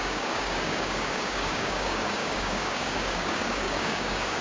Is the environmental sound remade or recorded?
remade